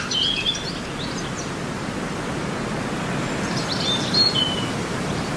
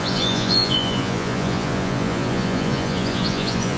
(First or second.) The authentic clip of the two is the first